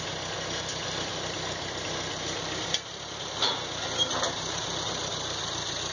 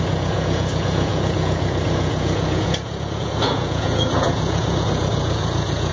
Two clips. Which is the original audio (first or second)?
first